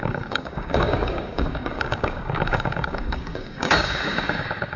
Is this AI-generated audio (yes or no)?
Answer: yes